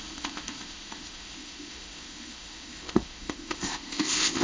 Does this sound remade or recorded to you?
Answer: remade